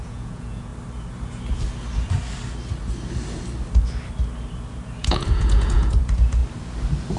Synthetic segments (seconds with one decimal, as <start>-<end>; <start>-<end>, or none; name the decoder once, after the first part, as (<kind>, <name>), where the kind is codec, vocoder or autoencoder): 0.0-0.7 (vocoder, Vocos); 5.0-6.4

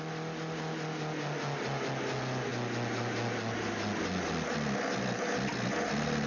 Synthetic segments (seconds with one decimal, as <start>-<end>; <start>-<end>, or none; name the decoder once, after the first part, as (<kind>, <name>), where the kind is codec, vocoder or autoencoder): none

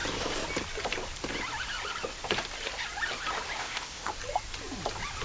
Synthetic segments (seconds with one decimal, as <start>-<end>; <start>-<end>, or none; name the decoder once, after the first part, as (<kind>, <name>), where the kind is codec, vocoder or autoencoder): 3.6-4.1 (codec, ZipCodec)

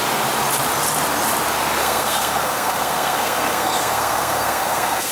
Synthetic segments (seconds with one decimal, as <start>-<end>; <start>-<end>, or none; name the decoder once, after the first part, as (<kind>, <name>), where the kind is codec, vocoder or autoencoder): 1.8-5.1 (codec, SNAC)